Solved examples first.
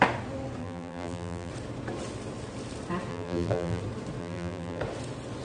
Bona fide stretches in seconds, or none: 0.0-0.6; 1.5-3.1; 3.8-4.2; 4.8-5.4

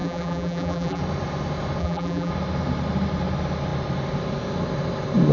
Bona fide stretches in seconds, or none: 1.0-1.8; 2.3-5.3

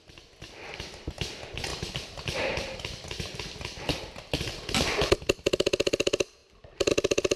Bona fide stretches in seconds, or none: 0.0-6.4; 6.9-7.4

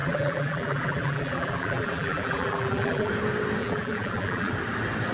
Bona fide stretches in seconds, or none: 3.1-3.6; 4.5-5.1

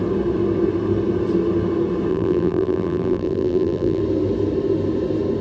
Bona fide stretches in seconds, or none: 0.0-2.1; 4.0-5.4

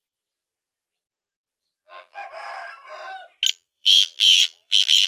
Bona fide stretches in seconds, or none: 2.2-3.5